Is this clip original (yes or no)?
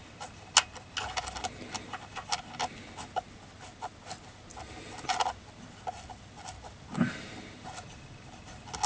yes